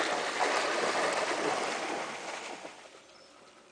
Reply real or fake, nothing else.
real